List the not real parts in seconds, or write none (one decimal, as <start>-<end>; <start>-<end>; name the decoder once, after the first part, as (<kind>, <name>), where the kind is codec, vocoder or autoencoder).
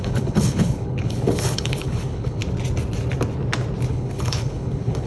0.0-2.4 (codec, HILCodec); 3.9-5.1